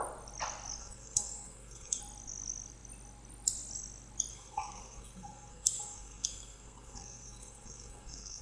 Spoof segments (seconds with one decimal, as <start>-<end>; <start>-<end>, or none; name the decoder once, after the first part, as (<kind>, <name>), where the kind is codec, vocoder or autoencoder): 0.8-2.0 (codec, SNAC); 4.3-8.4